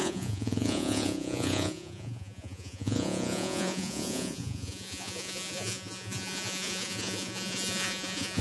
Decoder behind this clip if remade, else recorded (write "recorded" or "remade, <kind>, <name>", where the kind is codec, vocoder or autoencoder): remade, vocoder, Vocos